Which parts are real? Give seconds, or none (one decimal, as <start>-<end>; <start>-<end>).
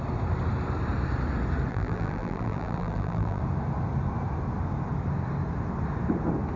0.0-1.7; 3.4-6.6